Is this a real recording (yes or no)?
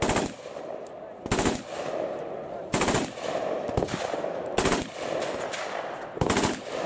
yes